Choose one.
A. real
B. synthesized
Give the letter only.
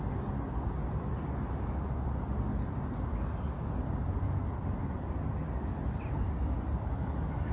A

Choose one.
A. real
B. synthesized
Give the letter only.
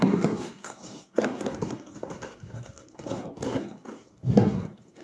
B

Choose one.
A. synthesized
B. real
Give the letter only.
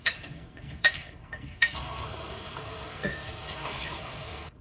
A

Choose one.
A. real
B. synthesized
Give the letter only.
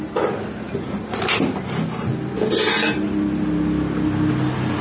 A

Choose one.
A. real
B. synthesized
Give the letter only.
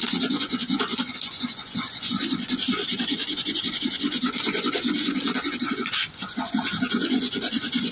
B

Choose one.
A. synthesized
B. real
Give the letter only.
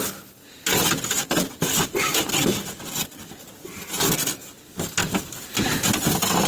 B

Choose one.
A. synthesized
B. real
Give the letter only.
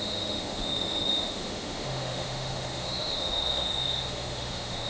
A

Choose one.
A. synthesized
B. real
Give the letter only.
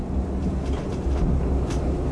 B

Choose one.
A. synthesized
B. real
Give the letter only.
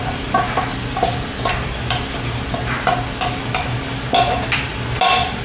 B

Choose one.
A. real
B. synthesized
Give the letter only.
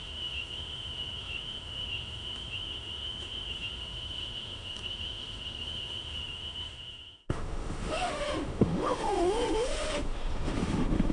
B